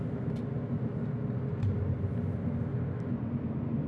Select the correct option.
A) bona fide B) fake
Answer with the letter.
A